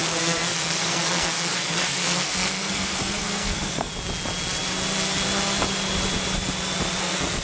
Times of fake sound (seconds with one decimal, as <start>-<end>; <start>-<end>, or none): 0.0-3.9; 7.0-7.4